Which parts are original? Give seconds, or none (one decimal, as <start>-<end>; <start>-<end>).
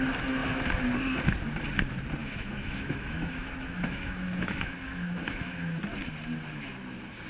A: 0.0-2.2; 5.8-7.3